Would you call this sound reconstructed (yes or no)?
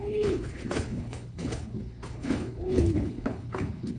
yes